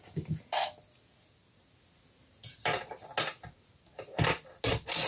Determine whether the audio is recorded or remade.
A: recorded